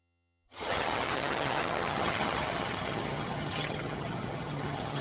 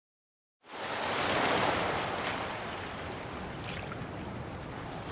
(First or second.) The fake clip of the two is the first